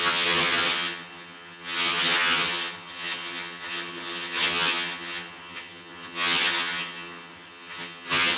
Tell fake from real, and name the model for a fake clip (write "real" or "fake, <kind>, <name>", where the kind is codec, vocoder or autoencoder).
fake, vocoder, HiFi-GAN